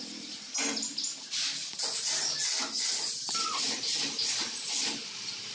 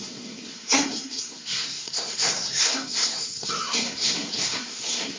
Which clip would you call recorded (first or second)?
first